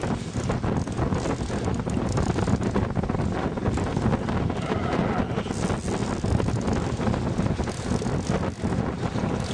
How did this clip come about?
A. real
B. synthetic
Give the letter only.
A